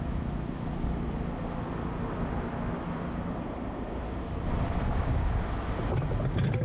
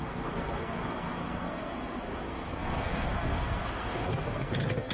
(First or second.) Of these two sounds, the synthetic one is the second